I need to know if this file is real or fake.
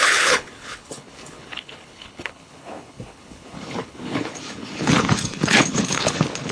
fake